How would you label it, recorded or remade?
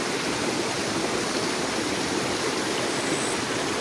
recorded